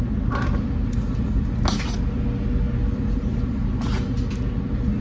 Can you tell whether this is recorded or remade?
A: recorded